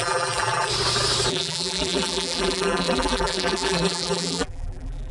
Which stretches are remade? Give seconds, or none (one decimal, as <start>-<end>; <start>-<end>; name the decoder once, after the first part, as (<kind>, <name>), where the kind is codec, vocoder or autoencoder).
0.0-0.7 (vocoder, BigVGAN v2); 1.3-5.1